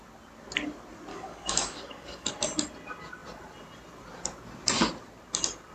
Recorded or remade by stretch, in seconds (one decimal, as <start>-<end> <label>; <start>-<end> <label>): 0.0-1.1 recorded; 1.1-2.3 remade; 2.3-5.7 recorded